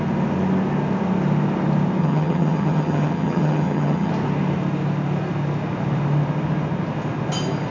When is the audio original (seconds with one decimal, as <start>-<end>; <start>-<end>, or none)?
0.0-2.0; 4.1-7.7